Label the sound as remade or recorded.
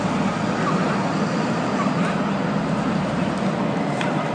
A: recorded